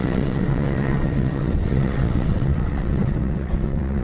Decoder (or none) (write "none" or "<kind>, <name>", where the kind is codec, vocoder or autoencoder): vocoder, WaveNeXt